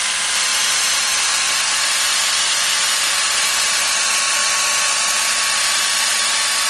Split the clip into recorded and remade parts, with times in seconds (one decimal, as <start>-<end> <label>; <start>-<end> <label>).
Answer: 0.0-6.7 recorded